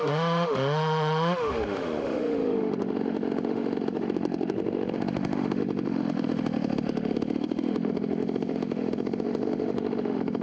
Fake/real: fake